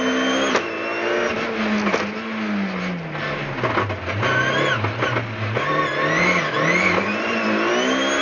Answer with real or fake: real